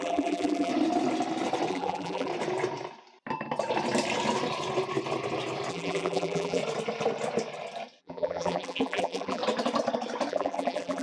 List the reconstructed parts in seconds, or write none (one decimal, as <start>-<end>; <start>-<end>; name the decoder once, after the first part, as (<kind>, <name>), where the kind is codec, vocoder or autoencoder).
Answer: 0.0-0.7 (vocoder, BigVGAN v2); 1.7-2.3; 5.7-6.6; 8.0-9.4; 10.3-11.0